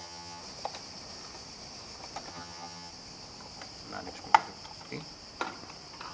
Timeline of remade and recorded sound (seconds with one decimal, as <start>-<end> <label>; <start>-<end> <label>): 0.0-0.4 remade; 0.4-2.3 recorded; 2.3-2.9 remade; 2.9-6.1 recorded